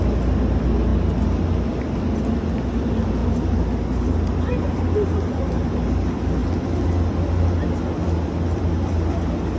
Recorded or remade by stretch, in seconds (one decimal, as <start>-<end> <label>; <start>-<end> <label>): 0.0-9.6 recorded